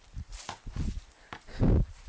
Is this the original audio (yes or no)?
yes